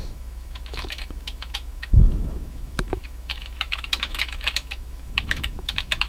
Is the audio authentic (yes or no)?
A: no